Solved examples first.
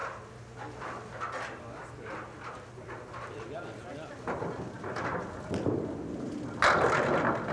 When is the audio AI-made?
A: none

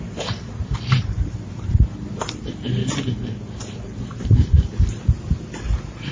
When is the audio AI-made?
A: 0.0-2.8 (vocoder, BigVGAN v2); 4.0-6.1

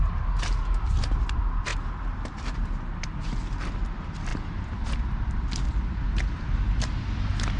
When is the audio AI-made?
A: none

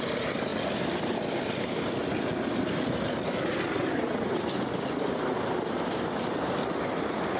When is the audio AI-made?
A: none

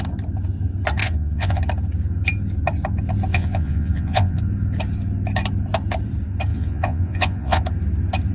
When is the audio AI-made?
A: 1.0-1.6 (vocoder, Vocos); 3.3-4.4; 6.5-7.6

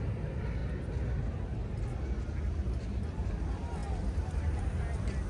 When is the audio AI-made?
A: none

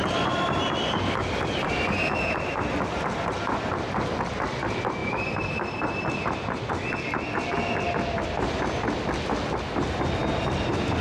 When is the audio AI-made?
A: 1.2-3.0 (vocoder, BigVGAN v2); 5.0-6.7

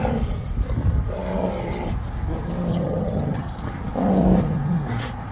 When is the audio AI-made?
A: 2.7-3.5 (vocoder, HiFi-GAN)